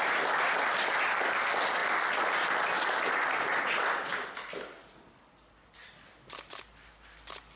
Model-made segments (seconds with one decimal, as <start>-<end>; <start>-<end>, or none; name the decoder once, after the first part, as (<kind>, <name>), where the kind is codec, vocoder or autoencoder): none